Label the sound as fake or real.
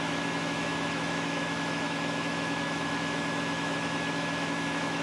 fake